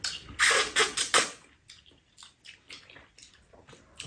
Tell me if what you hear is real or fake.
real